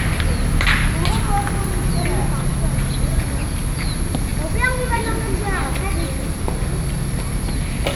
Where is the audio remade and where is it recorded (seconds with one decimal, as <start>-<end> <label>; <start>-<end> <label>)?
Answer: 0.0-8.0 recorded